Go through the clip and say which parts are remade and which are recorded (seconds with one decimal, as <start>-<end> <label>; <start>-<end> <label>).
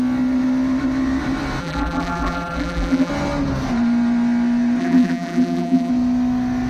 0.0-1.6 recorded; 1.6-3.1 remade; 3.1-4.8 recorded; 4.8-5.9 remade; 5.9-6.7 recorded